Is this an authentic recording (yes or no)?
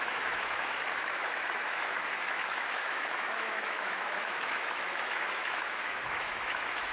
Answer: no